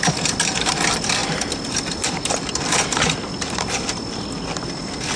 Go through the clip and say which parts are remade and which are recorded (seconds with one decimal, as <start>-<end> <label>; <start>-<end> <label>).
0.0-5.2 recorded